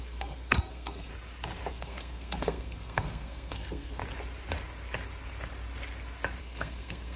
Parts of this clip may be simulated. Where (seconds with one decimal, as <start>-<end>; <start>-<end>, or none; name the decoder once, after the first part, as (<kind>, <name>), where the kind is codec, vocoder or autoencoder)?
0.0-1.1 (codec, SNAC); 1.7-4.0; 6.4-7.2